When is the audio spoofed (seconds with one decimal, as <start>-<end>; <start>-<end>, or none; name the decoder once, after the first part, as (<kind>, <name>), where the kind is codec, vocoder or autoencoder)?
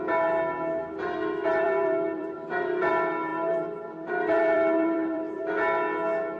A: 1.4-2.9 (vocoder, BigVGAN v2); 3.3-5.4